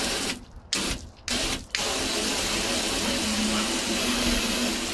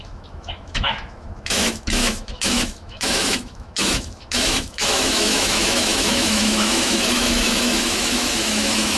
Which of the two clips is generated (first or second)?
second